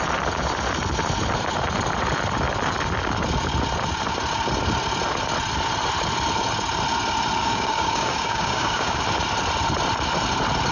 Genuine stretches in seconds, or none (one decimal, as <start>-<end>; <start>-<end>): 0.0-7.4; 9.0-10.7